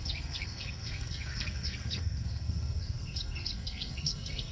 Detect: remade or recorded remade